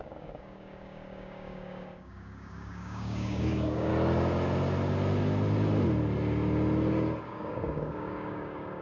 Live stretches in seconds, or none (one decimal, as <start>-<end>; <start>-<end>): 3.9-7.2